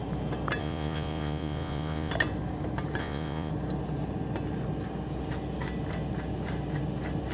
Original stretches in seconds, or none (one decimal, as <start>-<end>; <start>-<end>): 0.0-0.6; 2.1-3.0; 3.5-7.3